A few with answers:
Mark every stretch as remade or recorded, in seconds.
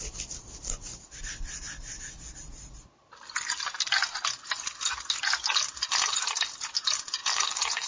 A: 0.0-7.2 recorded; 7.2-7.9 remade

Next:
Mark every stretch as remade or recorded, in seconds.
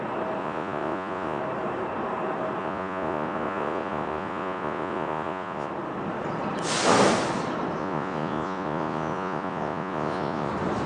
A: 0.0-0.4 recorded; 0.4-1.4 remade; 1.4-2.6 recorded; 2.6-5.7 remade; 5.7-7.8 recorded; 7.8-10.5 remade; 10.5-10.9 recorded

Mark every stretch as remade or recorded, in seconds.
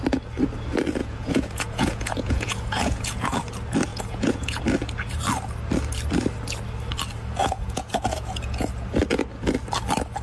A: 0.0-1.0 recorded; 1.0-3.4 remade; 3.4-3.9 recorded; 3.9-4.6 remade; 4.6-7.4 recorded; 7.4-8.7 remade; 8.7-10.2 recorded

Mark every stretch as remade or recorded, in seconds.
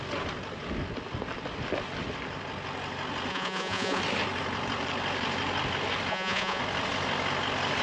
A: 0.0-3.3 recorded; 3.3-4.0 remade; 4.0-6.1 recorded; 6.1-6.6 remade; 6.6-7.8 recorded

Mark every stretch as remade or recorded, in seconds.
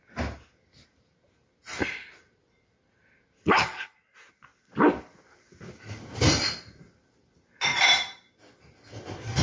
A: 0.0-9.4 recorded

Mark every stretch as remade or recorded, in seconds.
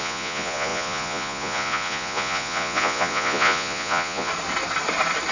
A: 0.0-4.3 remade; 4.3-5.3 recorded